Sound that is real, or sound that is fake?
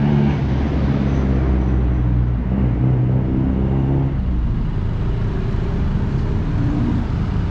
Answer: real